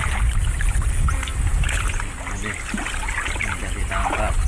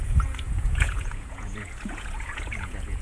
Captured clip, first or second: first